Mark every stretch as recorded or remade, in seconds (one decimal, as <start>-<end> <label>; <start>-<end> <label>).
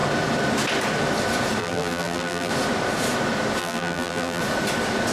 0.0-1.6 recorded; 1.6-2.5 remade; 2.5-3.6 recorded; 3.6-4.4 remade; 4.4-5.1 recorded